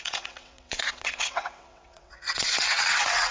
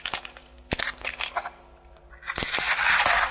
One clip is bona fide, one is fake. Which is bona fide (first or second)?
second